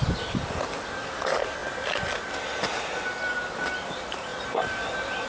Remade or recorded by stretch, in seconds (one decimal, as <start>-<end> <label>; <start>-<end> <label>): 0.0-5.3 recorded